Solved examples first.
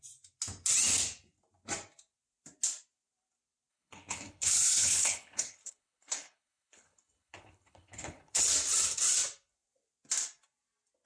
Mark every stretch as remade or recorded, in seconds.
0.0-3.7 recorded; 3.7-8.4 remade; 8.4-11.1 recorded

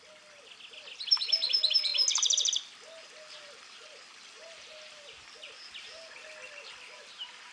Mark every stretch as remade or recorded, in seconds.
0.0-7.5 recorded

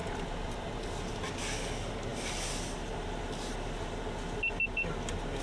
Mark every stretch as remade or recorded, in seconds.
0.0-5.4 recorded

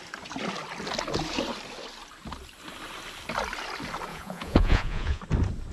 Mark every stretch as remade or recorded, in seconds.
0.0-4.1 recorded; 4.1-5.2 remade; 5.2-5.7 recorded